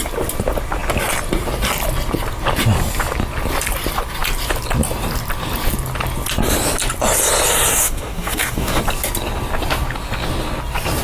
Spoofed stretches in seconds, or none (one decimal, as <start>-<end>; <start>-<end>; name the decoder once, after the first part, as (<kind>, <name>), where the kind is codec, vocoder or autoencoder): 7.7-8.8 (codec, DAC)